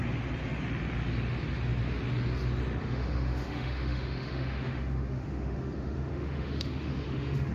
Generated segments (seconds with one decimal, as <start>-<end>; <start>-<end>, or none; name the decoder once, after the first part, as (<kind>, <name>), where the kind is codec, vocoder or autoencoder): 2.8-7.5 (autoencoder, DAC-VAE)